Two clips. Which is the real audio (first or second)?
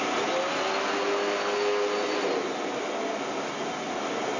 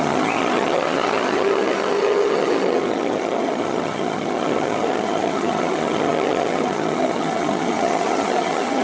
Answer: first